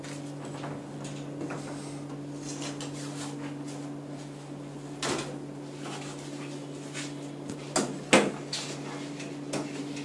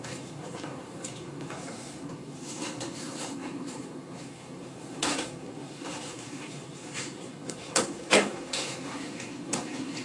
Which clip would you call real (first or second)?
first